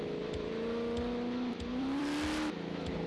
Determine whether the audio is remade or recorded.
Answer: remade